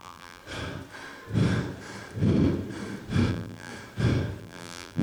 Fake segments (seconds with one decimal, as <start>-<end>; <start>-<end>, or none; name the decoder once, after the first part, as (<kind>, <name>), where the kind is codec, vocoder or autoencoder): 0.0-0.4 (vocoder, BigVGAN v2); 3.3-3.7; 4.4-5.0